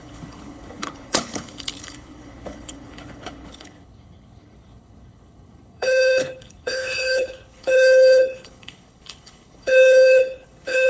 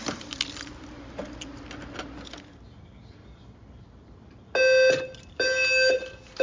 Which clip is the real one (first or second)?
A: second